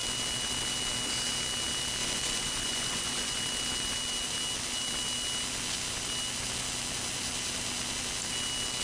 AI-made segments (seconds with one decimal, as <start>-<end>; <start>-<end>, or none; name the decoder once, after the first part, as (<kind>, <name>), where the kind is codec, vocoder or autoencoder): 2.0-3.4 (vocoder, Vocos)